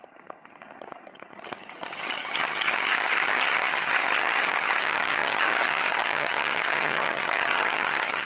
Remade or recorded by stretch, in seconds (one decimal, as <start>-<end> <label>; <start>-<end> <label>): 0.0-8.2 remade